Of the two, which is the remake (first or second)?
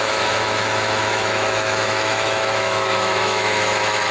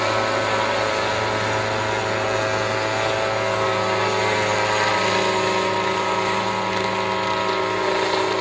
first